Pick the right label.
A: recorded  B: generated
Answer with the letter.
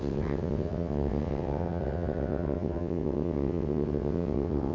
B